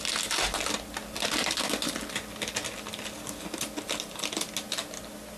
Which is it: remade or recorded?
recorded